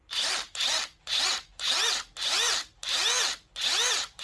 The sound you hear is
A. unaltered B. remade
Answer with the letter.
A